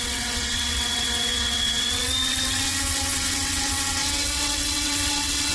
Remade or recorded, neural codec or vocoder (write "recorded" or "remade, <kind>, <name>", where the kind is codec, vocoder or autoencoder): remade, vocoder, WaveNeXt